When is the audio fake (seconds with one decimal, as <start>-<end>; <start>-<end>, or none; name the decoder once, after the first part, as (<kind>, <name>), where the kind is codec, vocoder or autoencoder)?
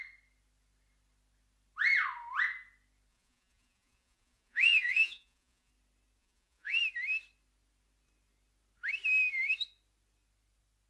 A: 3.1-5.7 (vocoder, Vocos); 6.2-6.8